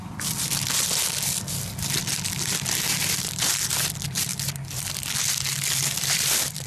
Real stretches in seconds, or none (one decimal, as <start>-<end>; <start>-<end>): none